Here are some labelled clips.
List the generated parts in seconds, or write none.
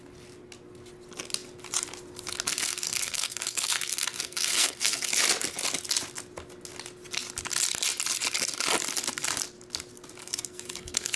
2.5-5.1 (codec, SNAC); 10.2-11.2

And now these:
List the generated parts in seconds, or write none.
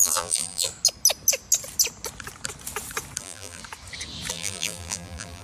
0.0-0.7 (vocoder, BigVGAN v2); 3.2-3.6; 4.3-5.4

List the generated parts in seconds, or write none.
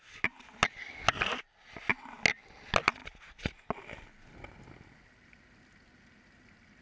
none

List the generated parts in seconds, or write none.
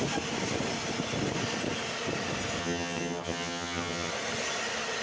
2.6-4.1 (vocoder, HiFi-GAN)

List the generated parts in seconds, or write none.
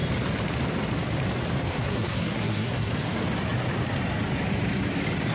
1.7-2.9 (codec, SNAC)